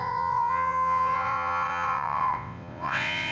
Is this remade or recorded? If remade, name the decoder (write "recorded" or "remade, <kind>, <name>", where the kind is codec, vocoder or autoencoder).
remade, vocoder, WaveNeXt